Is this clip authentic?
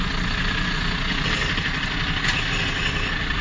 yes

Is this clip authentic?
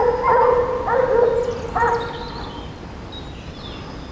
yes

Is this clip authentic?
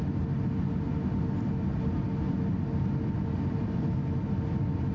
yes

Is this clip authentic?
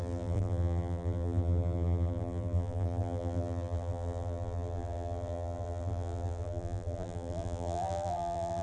no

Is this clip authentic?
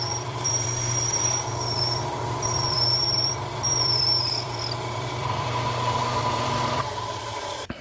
no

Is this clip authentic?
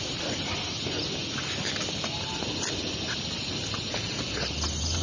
yes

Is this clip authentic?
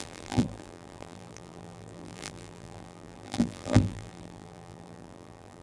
no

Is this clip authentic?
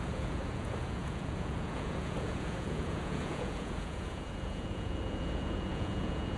no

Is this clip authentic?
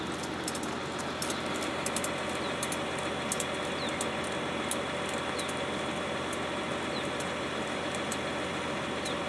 yes